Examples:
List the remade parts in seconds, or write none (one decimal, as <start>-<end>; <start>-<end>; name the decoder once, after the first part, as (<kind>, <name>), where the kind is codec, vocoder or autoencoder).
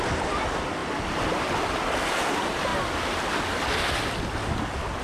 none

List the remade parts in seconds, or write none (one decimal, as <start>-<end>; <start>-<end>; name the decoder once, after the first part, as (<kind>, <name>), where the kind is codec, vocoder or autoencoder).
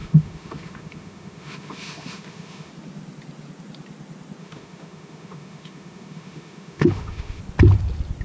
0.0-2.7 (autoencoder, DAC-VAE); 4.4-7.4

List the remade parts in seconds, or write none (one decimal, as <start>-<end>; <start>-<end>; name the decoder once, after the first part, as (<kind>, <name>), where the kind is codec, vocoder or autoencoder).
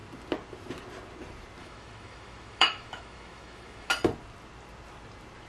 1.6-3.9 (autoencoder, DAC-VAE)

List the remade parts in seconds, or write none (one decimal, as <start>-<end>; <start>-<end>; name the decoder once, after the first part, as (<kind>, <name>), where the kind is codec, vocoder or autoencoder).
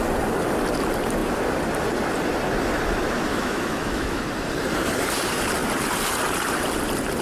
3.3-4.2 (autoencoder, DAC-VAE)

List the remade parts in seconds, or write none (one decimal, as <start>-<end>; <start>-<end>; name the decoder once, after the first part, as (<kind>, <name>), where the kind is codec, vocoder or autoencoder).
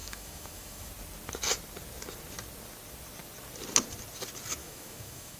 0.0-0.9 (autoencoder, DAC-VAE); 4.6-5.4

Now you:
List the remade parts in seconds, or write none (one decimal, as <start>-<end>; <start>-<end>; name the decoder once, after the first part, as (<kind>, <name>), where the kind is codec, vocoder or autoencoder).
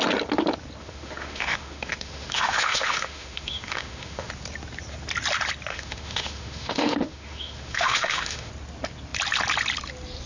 0.8-4.3 (autoencoder, DAC-VAE); 5.7-8.5